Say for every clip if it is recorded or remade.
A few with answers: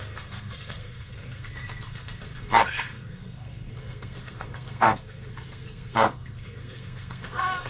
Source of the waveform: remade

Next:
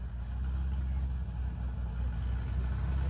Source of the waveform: recorded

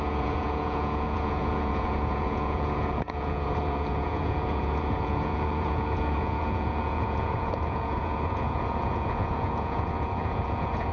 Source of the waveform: remade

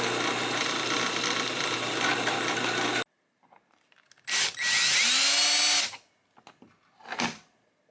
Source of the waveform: recorded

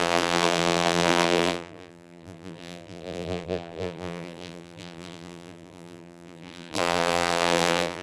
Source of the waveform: remade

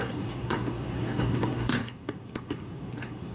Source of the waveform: remade